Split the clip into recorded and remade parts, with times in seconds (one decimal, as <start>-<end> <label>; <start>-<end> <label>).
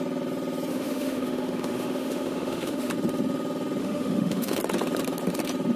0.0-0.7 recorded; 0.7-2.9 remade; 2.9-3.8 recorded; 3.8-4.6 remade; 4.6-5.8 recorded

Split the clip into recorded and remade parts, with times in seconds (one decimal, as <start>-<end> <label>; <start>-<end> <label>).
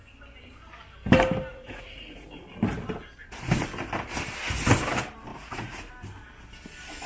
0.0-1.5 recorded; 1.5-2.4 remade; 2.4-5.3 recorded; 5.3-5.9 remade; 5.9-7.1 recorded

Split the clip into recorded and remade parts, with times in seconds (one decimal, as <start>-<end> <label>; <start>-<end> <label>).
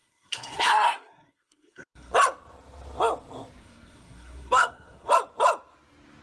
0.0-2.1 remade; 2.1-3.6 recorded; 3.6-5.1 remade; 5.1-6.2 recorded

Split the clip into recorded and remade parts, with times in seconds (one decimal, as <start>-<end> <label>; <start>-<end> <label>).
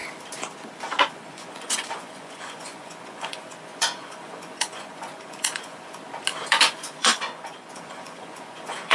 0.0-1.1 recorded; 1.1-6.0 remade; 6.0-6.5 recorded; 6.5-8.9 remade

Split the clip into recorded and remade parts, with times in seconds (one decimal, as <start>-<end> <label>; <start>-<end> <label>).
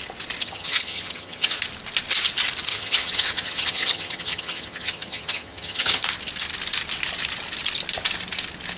0.0-0.4 recorded; 0.4-1.6 remade; 1.6-2.7 recorded; 2.7-6.0 remade; 6.0-8.8 recorded